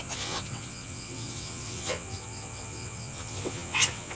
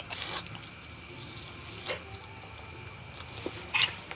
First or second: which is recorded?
second